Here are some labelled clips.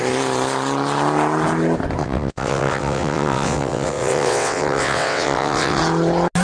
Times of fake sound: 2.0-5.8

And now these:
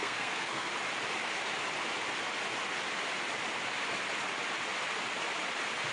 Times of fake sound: 0.0-0.7

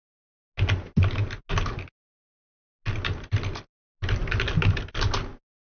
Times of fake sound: none

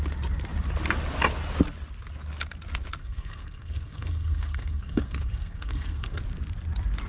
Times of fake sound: 3.0-6.2

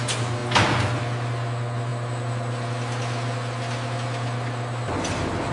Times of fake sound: none

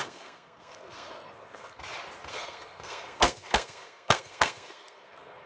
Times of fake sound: 0.0-1.8; 2.3-5.5

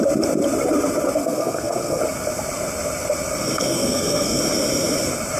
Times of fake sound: 1.2-2.0; 3.7-4.4